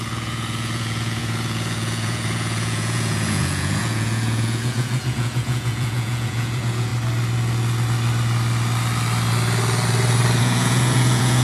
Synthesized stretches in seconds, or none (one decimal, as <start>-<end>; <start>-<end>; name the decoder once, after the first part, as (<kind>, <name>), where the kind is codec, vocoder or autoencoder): 0.0-6.9 (vocoder, Vocos); 10.4-11.4